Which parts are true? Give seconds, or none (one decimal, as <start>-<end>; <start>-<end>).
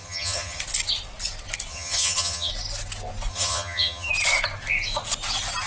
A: 0.6-1.7; 2.5-3.3; 4.1-5.7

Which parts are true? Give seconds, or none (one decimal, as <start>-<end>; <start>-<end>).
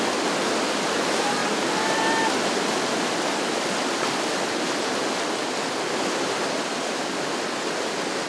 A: 0.0-8.3